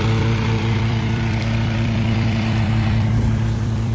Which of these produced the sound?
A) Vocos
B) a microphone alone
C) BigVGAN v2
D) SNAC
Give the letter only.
C